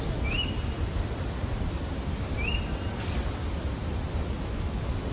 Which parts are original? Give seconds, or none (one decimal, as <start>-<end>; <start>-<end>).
0.0-5.1